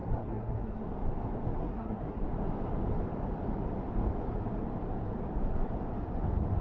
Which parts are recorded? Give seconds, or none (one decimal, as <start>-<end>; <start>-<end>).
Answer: 0.8-1.6; 2.2-6.6